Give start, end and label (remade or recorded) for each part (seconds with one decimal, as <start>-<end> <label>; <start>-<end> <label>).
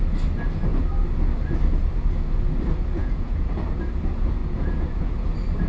0.0-3.0 recorded; 3.0-3.8 remade; 3.8-4.4 recorded; 4.4-5.1 remade; 5.1-5.7 recorded